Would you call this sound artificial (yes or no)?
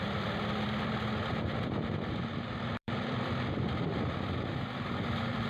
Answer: yes